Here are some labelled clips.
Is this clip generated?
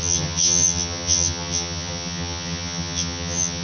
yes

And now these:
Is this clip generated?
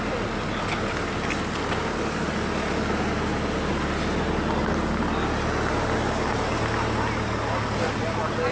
no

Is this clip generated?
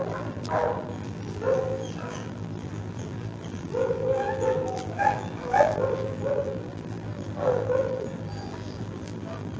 yes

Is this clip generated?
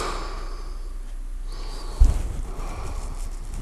no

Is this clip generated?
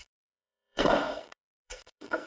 yes